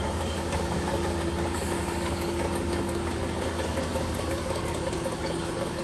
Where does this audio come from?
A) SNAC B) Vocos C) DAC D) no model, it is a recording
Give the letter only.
C